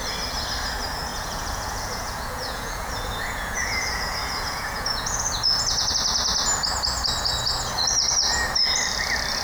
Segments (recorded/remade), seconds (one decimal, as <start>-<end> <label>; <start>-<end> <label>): 0.0-1.1 recorded; 1.1-5.9 remade; 5.9-9.4 recorded